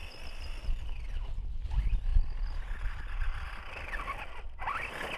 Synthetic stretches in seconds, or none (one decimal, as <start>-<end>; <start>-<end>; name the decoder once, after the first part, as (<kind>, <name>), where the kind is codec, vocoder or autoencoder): none